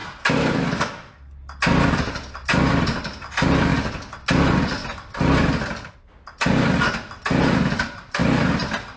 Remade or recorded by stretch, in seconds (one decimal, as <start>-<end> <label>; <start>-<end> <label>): 0.0-9.0 recorded